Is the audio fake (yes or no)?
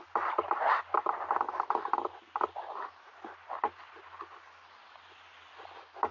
no